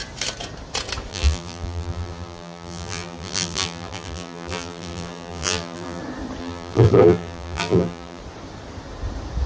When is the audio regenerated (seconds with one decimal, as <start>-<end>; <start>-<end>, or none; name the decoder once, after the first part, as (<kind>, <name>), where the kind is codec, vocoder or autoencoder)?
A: 1.1-6.0 (vocoder, BigVGAN v2); 6.4-8.2

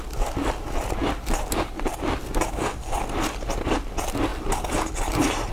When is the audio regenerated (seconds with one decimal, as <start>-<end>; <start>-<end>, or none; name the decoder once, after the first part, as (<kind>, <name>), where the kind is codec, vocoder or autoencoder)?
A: 1.0-2.4 (vocoder, BigVGAN v2)